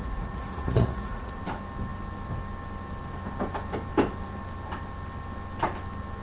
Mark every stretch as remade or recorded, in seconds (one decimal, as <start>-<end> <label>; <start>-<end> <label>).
0.0-1.4 remade; 1.4-6.2 recorded